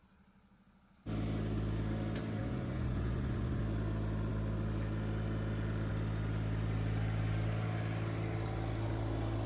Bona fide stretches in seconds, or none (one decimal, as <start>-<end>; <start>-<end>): 0.0-2.4; 3.6-9.5